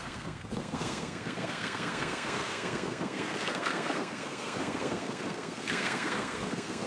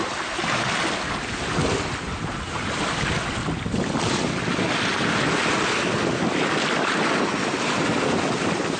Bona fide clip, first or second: second